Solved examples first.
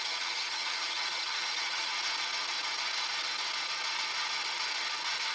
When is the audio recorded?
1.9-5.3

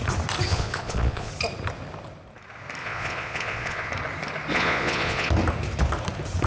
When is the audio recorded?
0.0-0.5; 1.3-2.8; 3.9-4.5; 5.3-6.5

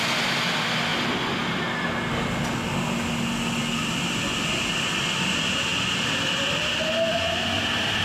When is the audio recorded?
0.0-8.0